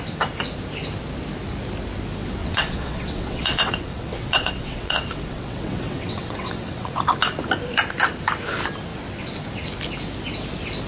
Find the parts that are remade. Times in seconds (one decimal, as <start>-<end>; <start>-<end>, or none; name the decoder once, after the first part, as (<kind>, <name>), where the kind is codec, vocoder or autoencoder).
2.4-7.0 (vocoder, WaveNeXt)